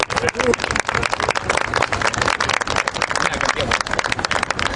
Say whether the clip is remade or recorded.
recorded